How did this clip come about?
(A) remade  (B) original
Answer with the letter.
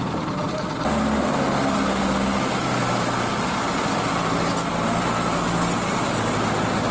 B